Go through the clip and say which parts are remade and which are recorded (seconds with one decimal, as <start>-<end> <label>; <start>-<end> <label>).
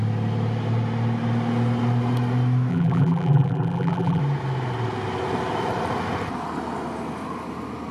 0.0-2.7 recorded; 2.7-4.2 remade; 4.2-7.9 recorded